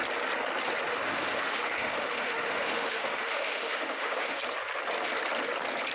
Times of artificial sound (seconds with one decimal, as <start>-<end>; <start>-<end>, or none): 0.9-4.4